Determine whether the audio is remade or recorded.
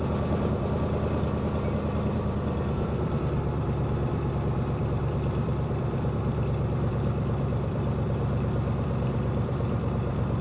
remade